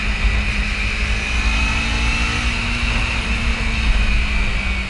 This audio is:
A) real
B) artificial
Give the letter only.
A